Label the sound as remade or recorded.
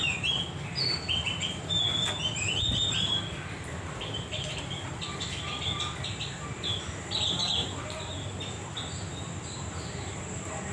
recorded